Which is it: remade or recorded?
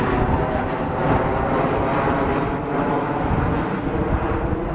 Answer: recorded